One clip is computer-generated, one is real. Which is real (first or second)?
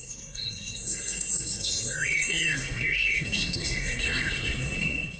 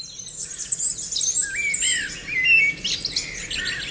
second